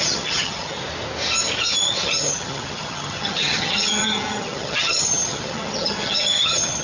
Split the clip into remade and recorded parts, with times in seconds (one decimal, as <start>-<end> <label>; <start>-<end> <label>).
0.0-0.8 remade; 0.8-1.8 recorded; 1.8-6.8 remade